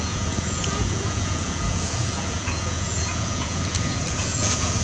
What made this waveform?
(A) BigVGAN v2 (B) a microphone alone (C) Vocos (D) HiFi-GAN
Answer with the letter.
C